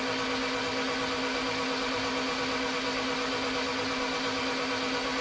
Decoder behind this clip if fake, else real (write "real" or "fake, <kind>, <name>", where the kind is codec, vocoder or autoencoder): real